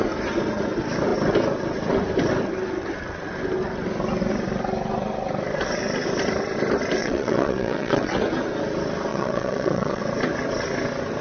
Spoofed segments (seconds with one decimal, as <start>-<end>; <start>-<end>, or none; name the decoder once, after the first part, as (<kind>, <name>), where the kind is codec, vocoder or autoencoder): 7.0-8.2 (vocoder, WaveNeXt); 9.1-10.0